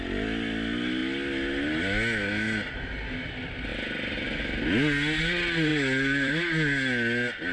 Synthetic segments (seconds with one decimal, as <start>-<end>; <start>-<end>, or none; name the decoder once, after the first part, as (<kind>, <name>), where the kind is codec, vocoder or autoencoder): 5.7-6.3 (vocoder, BigVGAN v2)